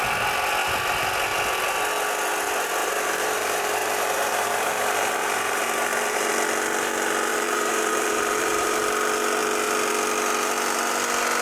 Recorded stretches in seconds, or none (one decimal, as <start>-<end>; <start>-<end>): 0.0-2.8; 6.3-7.3; 8.8-11.4